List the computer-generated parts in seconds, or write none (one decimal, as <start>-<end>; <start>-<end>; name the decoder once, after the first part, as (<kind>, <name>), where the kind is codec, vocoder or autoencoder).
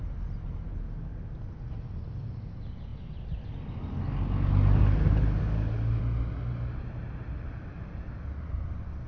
5.4-6.0 (codec, DAC)